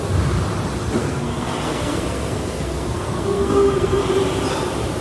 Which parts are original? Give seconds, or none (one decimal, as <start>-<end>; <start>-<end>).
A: 0.0-1.0; 4.0-5.0